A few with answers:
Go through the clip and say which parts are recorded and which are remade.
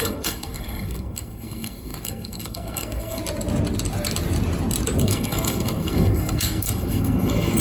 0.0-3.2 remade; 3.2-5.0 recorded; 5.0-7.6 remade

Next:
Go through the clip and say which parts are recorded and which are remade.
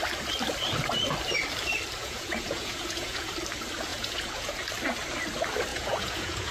0.0-2.0 recorded; 2.0-3.3 remade; 3.3-3.9 recorded; 3.9-4.6 remade; 4.6-5.7 recorded; 5.7-6.5 remade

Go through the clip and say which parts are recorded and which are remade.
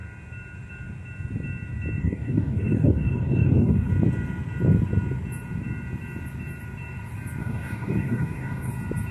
0.0-2.0 recorded; 2.0-3.9 remade; 3.9-7.4 recorded; 7.4-8.7 remade; 8.7-9.1 recorded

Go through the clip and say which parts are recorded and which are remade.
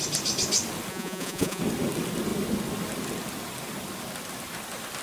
0.0-0.9 recorded; 0.9-1.6 remade; 1.6-5.0 recorded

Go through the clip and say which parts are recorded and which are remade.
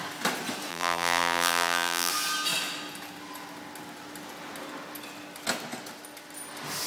0.0-0.7 recorded; 0.7-2.1 remade; 2.1-6.9 recorded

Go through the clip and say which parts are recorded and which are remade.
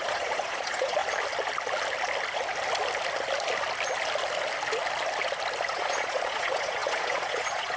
0.0-1.0 remade; 1.0-5.7 recorded; 5.7-7.8 remade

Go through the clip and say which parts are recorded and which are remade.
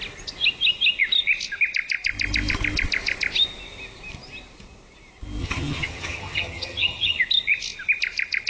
0.0-5.4 recorded; 5.4-7.2 remade; 7.2-8.5 recorded